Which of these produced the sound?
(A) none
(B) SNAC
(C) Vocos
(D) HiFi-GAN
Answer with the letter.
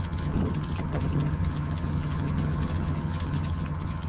D